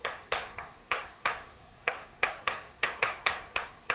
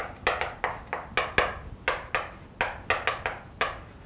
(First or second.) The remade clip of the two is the first